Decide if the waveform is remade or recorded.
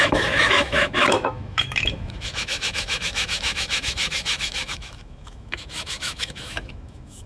remade